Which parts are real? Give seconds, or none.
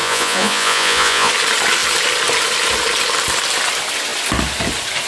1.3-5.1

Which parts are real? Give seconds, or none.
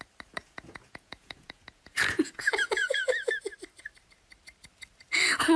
0.0-0.4; 3.3-5.6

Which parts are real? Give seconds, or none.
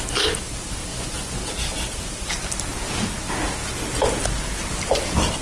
0.0-0.9; 1.5-5.4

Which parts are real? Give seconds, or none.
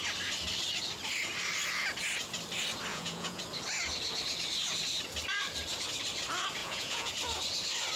0.0-2.9; 3.4-6.6; 7.1-8.0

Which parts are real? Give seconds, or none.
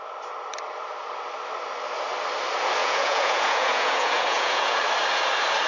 0.0-2.8; 4.8-5.7